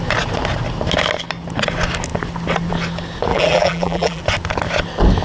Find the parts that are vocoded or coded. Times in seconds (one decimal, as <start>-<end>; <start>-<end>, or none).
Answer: 3.3-4.2